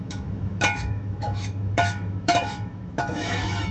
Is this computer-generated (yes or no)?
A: yes